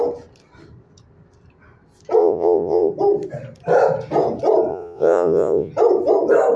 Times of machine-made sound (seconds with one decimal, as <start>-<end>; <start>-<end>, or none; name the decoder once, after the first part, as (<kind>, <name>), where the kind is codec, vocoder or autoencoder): 2.2-2.9 (vocoder, Vocos); 4.7-5.7